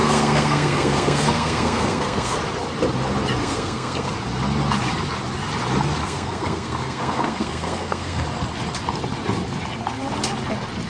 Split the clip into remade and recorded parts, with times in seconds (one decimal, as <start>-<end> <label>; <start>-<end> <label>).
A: 0.0-2.4 remade; 2.4-3.4 recorded; 3.4-4.1 remade; 4.1-6.0 recorded; 6.0-8.2 remade; 8.2-10.9 recorded